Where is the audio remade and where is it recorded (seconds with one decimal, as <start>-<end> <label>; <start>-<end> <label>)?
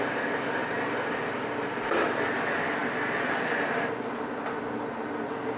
0.0-5.6 recorded